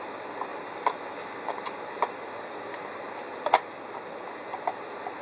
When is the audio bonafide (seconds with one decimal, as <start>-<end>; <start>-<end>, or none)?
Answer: 0.0-5.2